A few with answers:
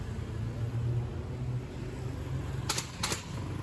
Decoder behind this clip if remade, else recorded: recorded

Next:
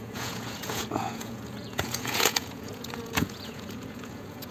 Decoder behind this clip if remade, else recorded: remade, vocoder, Vocos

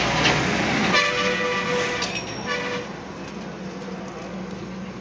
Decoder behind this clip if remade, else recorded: recorded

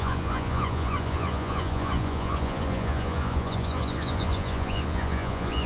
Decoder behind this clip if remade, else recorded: remade, vocoder, Vocos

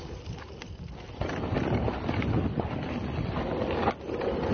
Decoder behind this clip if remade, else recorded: recorded